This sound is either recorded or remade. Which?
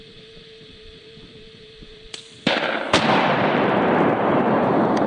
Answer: remade